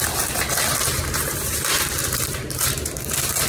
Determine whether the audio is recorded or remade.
remade